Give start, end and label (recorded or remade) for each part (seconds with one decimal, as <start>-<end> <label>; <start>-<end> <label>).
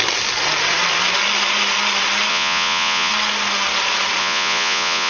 0.0-2.3 recorded; 2.3-3.1 remade; 3.1-4.2 recorded; 4.2-5.1 remade